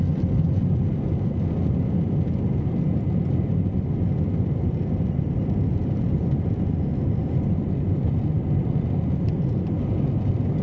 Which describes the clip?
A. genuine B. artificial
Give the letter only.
A